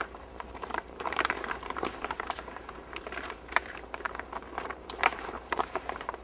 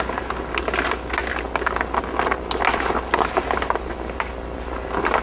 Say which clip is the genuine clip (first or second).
second